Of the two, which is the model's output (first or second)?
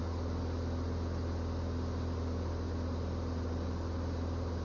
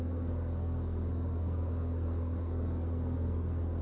second